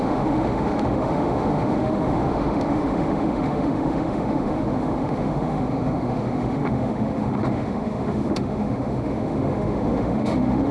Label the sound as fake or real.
fake